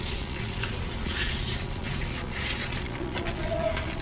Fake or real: fake